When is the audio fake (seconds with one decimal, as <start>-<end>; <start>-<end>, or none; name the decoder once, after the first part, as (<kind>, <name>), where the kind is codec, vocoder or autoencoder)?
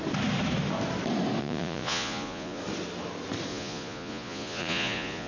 1.4-2.6 (vocoder, Vocos); 3.5-5.3